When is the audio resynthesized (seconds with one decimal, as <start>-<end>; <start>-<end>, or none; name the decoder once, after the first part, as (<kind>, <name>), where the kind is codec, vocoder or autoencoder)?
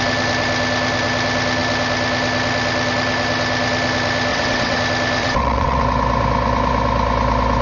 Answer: 4.3-4.8 (vocoder, WaveNeXt); 5.2-5.8